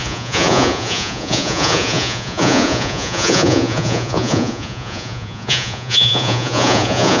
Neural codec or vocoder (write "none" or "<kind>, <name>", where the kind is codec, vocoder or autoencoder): vocoder, Vocos